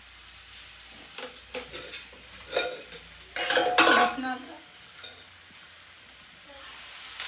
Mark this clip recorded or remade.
recorded